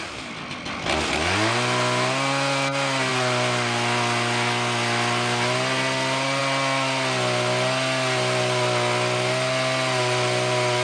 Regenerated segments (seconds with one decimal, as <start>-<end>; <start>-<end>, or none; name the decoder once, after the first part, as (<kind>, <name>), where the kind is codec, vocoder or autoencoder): none